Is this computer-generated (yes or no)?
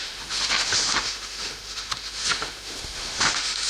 yes